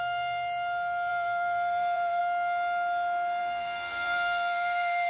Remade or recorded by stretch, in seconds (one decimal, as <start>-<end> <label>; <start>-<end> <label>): 0.0-1.1 recorded; 1.1-2.2 remade; 2.2-3.4 recorded; 3.4-5.1 remade